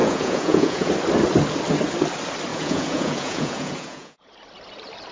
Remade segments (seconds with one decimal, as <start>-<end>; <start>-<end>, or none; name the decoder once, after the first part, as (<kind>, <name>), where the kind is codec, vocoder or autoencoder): 0.0-0.9 (vocoder, Vocos); 2.5-4.3